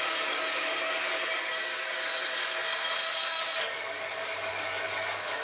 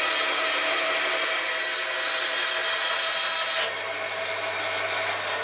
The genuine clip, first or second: second